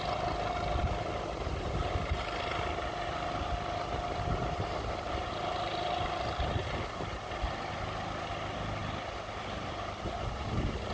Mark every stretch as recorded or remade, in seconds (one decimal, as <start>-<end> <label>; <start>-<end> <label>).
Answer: 0.0-10.9 recorded